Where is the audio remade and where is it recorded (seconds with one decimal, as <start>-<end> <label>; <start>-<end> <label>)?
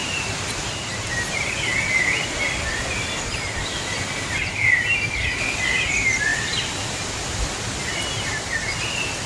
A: 0.0-1.1 remade; 1.1-9.3 recorded